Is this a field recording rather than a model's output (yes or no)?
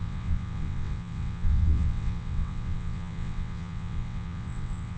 no